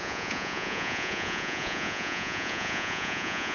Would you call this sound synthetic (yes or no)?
yes